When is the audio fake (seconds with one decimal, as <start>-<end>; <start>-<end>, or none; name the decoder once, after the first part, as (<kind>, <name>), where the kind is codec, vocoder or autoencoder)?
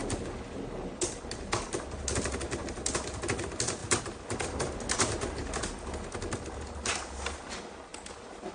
3.8-4.7 (vocoder, BigVGAN v2)